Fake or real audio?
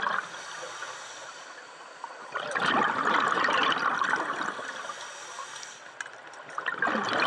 fake